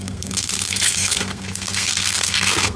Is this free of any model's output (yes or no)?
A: no